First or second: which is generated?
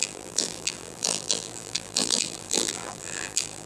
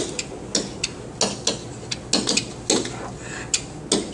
first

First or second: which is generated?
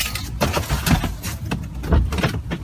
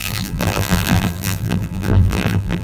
second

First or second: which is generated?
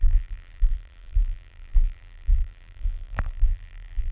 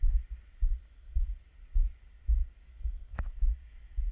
first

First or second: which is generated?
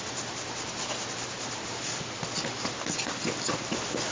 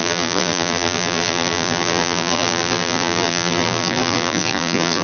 second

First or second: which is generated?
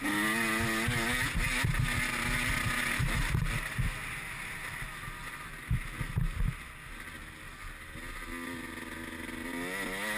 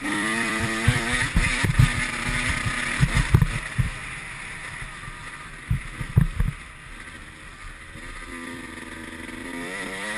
second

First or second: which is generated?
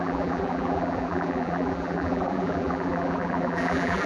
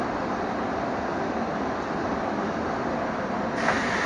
first